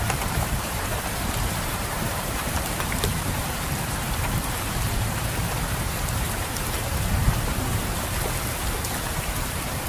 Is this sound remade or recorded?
remade